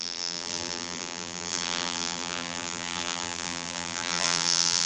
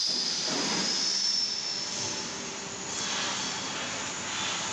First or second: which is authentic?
second